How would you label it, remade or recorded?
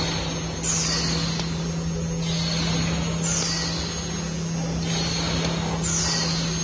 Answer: recorded